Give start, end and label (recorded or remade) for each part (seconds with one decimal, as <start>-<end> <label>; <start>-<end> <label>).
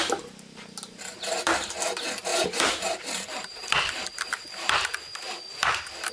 0.0-2.3 recorded; 2.3-6.1 remade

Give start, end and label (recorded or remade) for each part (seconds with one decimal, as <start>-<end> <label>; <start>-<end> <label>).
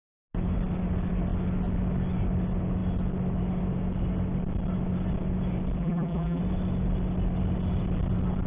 0.0-5.8 recorded; 5.8-6.4 remade; 6.4-8.5 recorded